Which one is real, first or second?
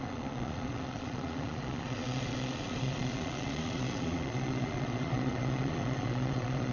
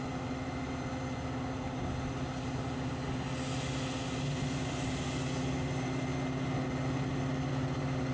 second